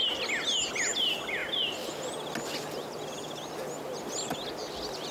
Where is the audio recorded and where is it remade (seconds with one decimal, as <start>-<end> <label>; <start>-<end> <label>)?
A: 0.0-5.1 recorded